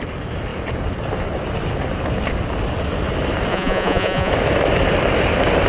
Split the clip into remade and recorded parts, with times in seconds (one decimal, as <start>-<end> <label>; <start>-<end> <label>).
0.0-3.5 recorded; 3.5-4.3 remade; 4.3-5.7 recorded